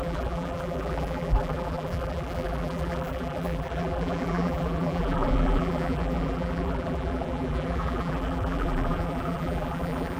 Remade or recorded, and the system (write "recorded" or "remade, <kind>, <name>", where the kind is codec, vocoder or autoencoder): remade, vocoder, BigVGAN v2